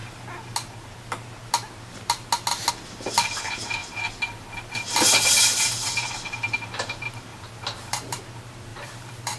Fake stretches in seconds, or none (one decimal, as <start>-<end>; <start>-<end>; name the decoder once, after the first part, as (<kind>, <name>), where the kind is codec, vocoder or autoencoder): 7.3-8.2 (vocoder, BigVGAN v2); 8.7-9.4